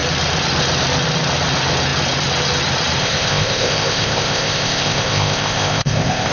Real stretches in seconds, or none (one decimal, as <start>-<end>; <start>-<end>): 0.0-3.0